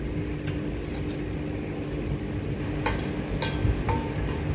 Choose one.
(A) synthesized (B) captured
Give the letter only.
B